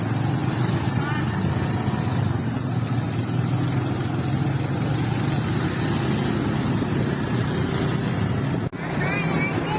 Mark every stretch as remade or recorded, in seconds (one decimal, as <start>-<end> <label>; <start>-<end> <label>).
0.0-0.4 recorded; 0.4-1.3 remade; 1.3-9.8 recorded